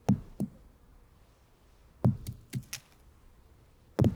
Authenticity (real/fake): real